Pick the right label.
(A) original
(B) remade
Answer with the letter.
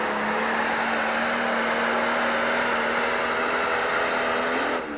A